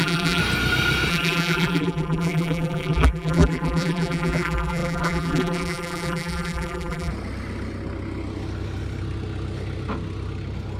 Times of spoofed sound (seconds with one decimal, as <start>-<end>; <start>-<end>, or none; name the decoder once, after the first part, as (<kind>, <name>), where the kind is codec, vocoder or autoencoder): 0.0-0.4 (vocoder, BigVGAN v2); 1.1-7.1